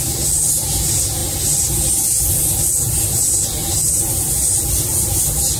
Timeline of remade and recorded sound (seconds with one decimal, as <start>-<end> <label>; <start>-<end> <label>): 0.0-3.6 recorded; 3.6-4.3 remade; 4.3-5.6 recorded